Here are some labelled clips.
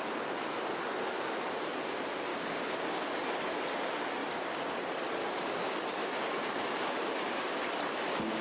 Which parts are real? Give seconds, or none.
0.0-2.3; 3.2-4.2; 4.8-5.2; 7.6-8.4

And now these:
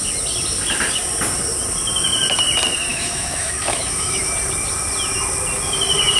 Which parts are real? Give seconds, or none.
0.0-2.9; 4.2-6.2

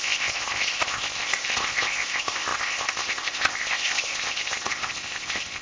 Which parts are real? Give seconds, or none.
none

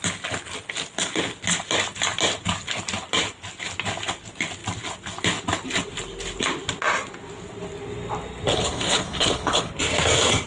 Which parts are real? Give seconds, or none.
0.0-8.5; 9.7-10.5